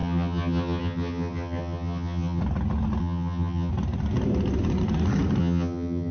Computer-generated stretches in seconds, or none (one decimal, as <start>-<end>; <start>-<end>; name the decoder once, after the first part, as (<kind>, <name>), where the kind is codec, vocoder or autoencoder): 0.0-2.4 (vocoder, HiFi-GAN); 3.0-3.7; 5.4-6.1